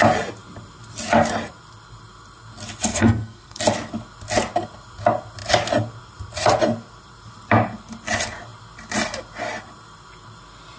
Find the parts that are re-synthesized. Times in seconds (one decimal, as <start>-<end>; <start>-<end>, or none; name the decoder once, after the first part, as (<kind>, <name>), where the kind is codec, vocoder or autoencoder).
2.9-3.6 (codec, SNAC)